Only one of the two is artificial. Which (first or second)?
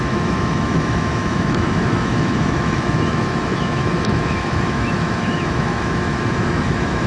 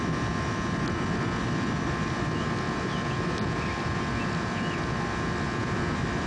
first